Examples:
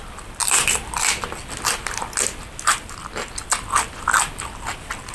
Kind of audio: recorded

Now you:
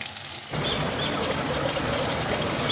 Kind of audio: recorded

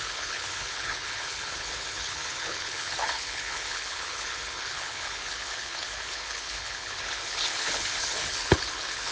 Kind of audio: remade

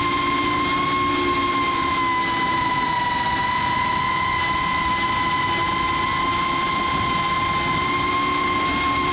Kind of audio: recorded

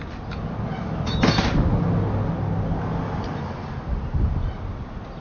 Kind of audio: recorded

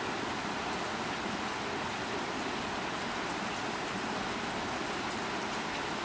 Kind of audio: recorded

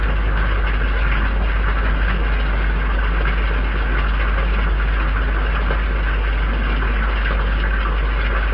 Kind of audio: recorded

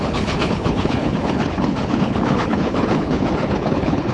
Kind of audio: remade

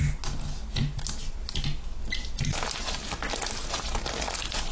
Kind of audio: recorded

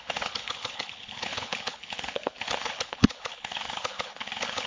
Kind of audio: remade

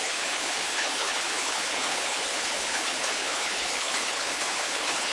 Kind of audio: remade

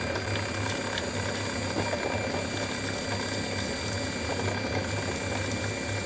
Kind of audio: recorded